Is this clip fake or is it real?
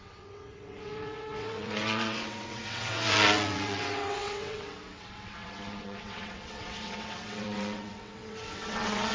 fake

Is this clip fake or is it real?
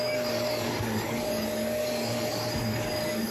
fake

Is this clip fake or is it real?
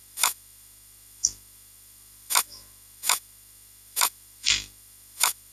fake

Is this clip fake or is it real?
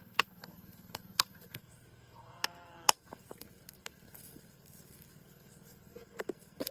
fake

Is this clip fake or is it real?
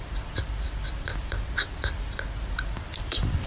fake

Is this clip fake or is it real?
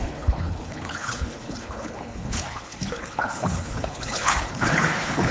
fake